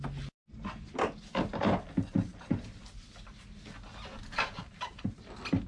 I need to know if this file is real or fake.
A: real